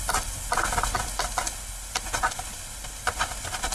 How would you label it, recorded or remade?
recorded